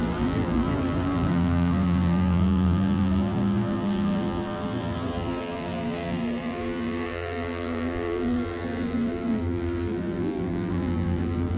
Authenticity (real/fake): fake